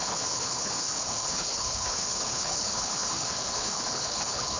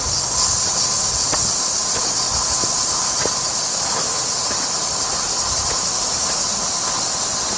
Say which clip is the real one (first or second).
second